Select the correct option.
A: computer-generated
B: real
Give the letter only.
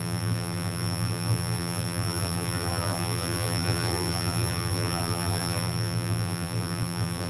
A